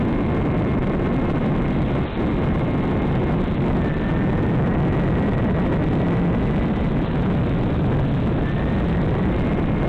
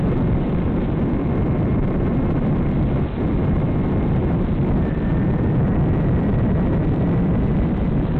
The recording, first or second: first